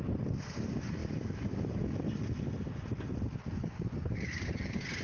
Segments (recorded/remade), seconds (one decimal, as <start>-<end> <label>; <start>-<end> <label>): 0.0-3.6 recorded; 3.6-5.0 remade